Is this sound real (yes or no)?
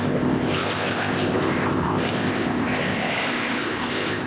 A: no